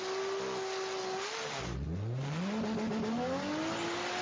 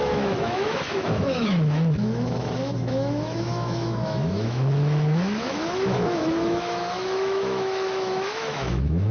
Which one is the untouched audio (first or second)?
first